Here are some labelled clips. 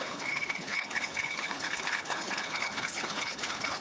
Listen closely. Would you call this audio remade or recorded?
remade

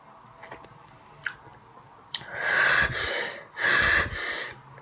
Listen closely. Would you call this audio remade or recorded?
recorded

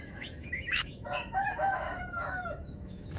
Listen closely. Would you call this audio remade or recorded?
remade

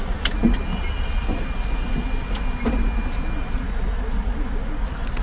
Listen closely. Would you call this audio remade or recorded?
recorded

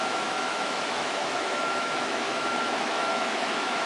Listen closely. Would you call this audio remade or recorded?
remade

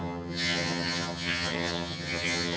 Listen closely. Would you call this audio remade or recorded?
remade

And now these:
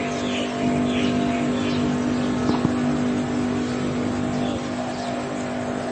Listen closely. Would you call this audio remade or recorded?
recorded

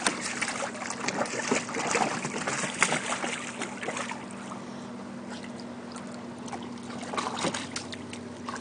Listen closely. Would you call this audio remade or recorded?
recorded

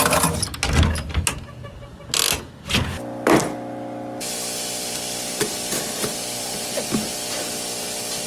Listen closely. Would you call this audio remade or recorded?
recorded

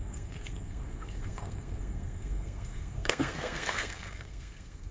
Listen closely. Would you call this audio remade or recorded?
remade